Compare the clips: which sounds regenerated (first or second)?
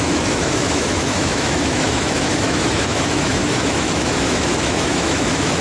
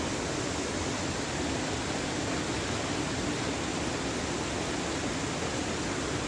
first